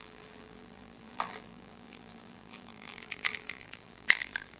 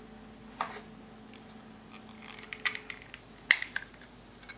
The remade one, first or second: first